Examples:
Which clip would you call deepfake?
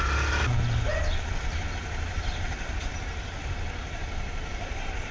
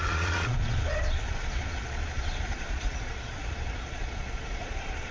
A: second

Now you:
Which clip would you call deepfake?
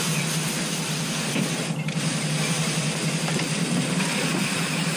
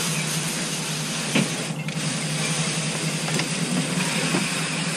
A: first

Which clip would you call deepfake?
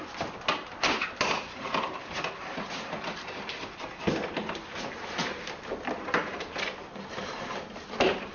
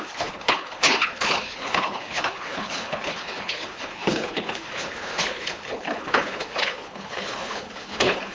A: second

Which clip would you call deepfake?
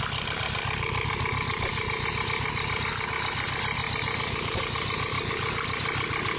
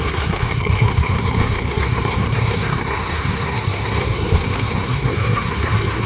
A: second